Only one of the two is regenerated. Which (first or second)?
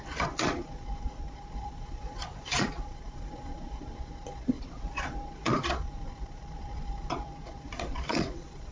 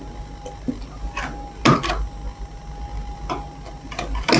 first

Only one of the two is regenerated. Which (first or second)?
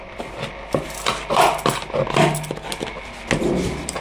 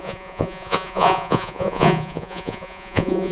second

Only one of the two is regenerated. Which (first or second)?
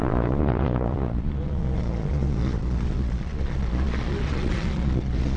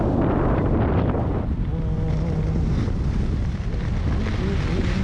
first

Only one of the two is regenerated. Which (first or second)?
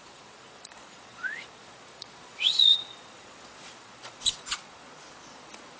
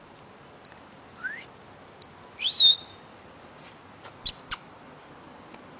first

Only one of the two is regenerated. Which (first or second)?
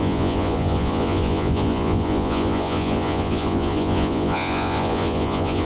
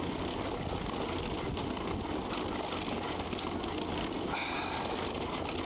first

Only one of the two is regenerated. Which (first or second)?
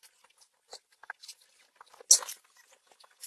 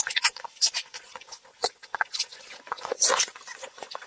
second